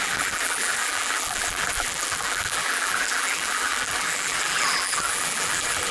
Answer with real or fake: fake